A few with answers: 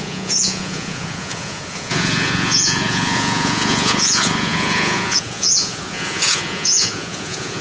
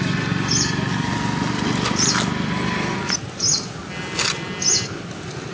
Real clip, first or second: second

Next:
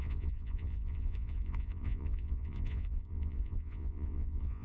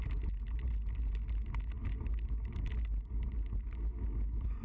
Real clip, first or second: second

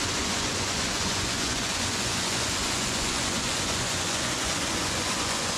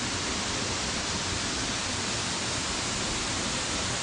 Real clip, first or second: second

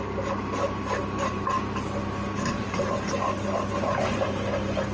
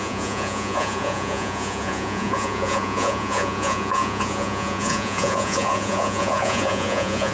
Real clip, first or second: first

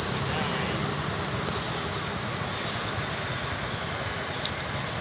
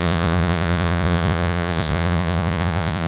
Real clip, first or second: first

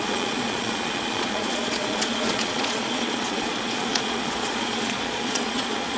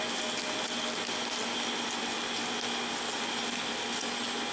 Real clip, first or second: second